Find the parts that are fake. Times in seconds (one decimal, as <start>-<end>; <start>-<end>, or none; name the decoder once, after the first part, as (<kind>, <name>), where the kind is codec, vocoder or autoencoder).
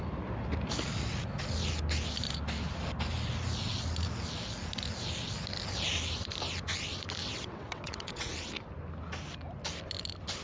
7.2-8.3 (vocoder, WaveNeXt)